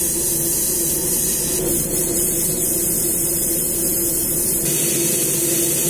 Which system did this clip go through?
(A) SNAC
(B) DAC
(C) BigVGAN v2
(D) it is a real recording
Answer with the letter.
D